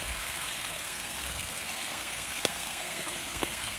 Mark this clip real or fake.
fake